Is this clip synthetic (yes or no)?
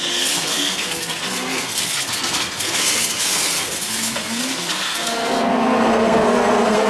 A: yes